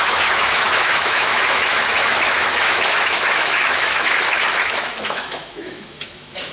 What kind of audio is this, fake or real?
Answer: fake